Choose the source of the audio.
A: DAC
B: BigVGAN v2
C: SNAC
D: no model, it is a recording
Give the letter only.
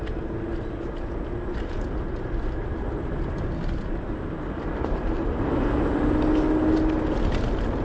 D